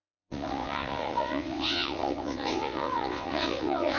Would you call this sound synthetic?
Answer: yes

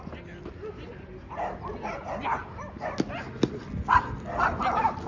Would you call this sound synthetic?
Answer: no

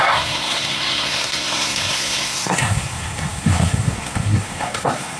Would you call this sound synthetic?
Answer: yes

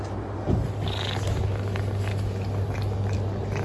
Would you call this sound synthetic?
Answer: no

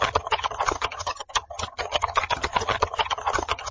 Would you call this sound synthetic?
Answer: yes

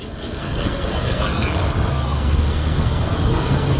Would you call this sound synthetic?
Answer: yes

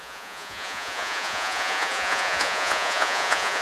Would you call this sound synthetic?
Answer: yes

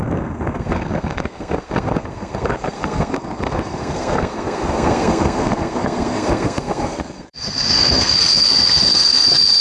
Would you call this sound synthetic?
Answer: yes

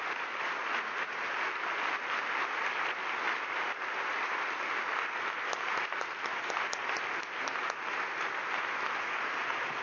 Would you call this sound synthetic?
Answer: no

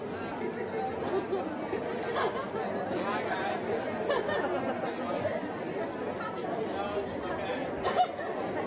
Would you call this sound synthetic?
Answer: no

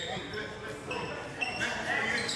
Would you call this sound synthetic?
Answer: no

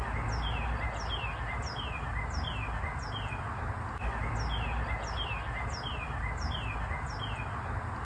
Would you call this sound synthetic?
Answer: no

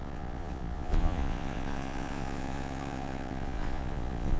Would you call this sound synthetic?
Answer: yes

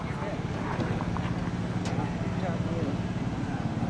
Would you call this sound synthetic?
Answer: no